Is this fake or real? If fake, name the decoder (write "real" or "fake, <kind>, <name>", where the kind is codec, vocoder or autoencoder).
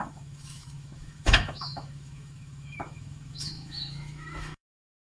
fake, autoencoder, DAC-VAE